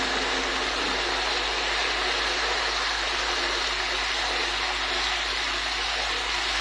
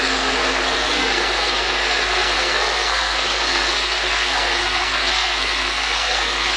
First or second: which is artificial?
second